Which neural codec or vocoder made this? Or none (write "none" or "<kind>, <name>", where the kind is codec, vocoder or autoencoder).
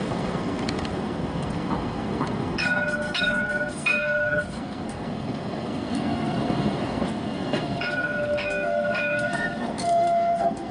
codec, SNAC